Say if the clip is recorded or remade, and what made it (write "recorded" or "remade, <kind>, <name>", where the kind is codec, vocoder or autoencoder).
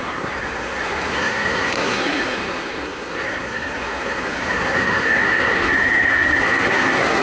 remade, codec, SNAC